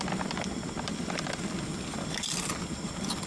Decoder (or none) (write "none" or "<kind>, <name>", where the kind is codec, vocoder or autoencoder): vocoder, BigVGAN v2